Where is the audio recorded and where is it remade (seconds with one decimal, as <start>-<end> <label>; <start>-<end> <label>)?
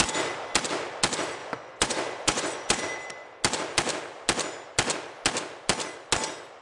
0.0-1.4 recorded; 1.4-2.8 remade; 2.8-6.6 recorded